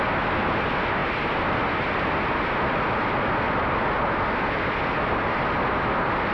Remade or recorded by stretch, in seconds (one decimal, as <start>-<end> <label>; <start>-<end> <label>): 0.0-6.3 recorded